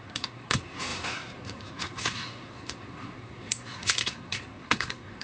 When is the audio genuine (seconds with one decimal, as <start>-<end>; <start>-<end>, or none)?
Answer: none